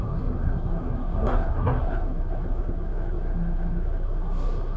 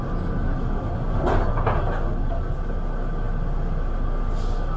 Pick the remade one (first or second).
first